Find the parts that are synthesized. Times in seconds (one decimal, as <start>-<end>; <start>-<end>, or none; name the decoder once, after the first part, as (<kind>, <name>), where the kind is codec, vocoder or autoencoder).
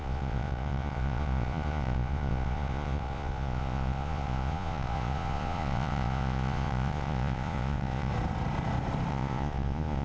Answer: 0.0-8.1 (vocoder, Vocos); 9.1-10.0